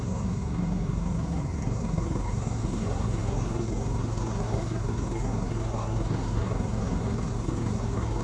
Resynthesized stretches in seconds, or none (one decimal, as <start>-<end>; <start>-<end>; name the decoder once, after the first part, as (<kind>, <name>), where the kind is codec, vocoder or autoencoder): 0.0-8.2 (codec, SNAC)